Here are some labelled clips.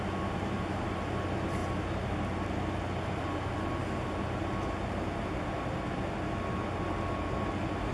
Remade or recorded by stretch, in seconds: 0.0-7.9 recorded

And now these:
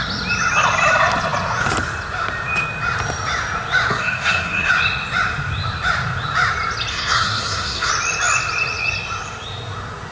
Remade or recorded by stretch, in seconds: 0.0-3.9 recorded; 3.9-4.7 remade; 4.7-6.9 recorded; 6.9-7.9 remade; 7.9-10.1 recorded

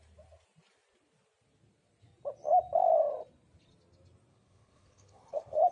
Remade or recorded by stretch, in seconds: 0.0-4.3 recorded; 4.3-5.7 remade

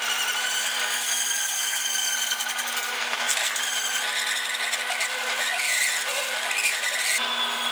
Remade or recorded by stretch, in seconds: 0.0-0.6 recorded; 0.6-3.6 remade; 3.6-7.7 recorded

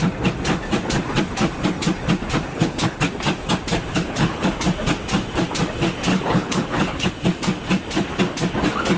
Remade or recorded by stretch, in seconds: 0.0-2.5 recorded; 2.5-3.0 remade; 3.0-3.9 recorded; 3.9-4.5 remade; 4.5-6.1 recorded; 6.1-7.1 remade; 7.1-9.0 recorded

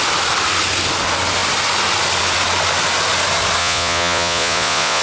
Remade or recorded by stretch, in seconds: 0.0-3.6 recorded; 3.6-5.0 remade

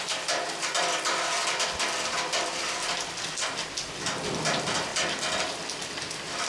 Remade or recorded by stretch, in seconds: 0.0-4.9 remade; 4.9-6.5 recorded